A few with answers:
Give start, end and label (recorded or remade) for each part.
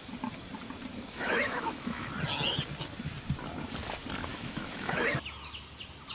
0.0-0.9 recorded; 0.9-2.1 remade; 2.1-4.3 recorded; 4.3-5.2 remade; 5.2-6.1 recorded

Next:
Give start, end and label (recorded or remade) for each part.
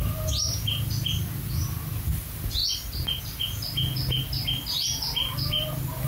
0.0-6.1 recorded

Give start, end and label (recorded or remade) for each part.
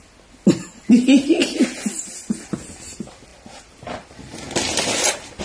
0.0-5.4 recorded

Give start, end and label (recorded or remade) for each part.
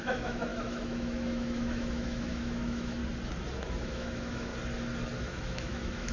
0.0-3.0 remade; 3.0-3.8 recorded; 3.8-4.5 remade; 4.5-5.2 recorded; 5.2-6.1 remade